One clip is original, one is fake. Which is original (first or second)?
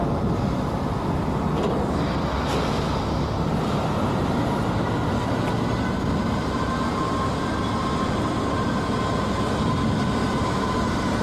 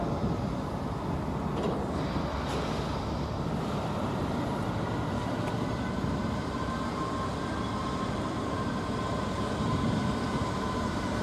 first